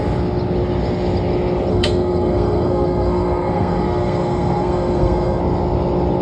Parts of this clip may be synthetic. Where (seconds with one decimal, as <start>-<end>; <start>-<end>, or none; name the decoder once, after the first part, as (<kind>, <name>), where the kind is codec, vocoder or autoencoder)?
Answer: 1.7-5.4 (codec, SNAC)